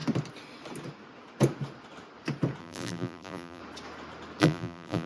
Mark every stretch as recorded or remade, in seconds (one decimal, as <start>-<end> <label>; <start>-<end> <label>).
0.0-2.6 recorded; 2.6-3.6 remade; 3.6-4.4 recorded; 4.4-5.1 remade